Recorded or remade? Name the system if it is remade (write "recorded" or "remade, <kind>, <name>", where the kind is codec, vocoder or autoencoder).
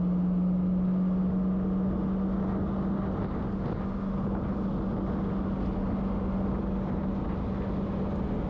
recorded